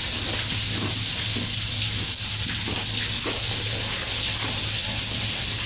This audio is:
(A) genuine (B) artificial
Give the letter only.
A